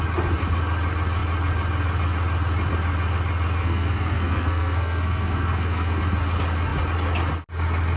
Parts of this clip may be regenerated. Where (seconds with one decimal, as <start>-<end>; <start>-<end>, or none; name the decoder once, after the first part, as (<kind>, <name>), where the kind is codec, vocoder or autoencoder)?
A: 3.6-6.0 (codec, SNAC)